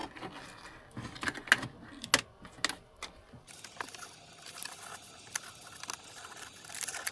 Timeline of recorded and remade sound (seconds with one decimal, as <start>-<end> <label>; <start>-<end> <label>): 0.0-7.1 recorded